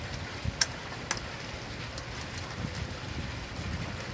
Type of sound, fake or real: real